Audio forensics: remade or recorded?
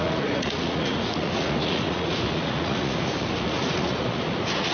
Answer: remade